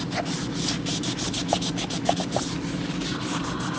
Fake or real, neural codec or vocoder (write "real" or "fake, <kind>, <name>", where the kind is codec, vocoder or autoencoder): real